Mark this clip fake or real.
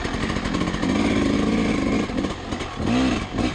real